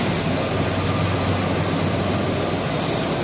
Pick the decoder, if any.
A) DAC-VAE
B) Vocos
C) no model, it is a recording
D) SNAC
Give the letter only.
C